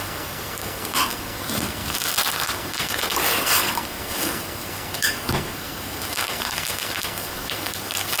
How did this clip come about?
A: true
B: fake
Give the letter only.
B